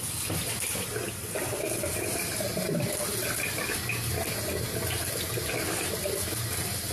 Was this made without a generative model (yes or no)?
yes